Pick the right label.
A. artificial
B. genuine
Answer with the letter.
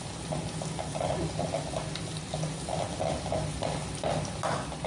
B